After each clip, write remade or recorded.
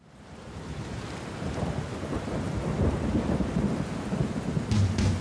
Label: recorded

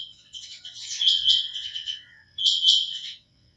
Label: remade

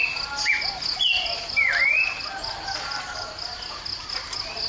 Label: recorded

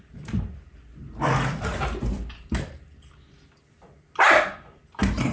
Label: recorded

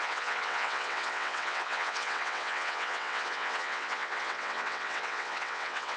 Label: remade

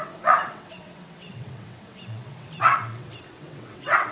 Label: remade